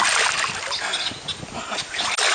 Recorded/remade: recorded